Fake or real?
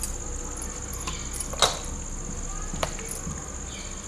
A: real